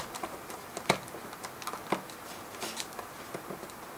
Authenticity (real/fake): real